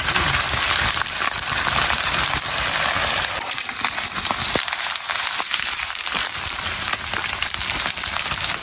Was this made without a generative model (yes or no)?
no